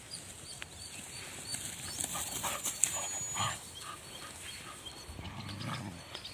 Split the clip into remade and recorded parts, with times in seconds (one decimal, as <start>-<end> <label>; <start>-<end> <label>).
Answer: 0.0-6.3 recorded